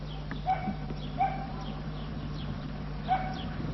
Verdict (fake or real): fake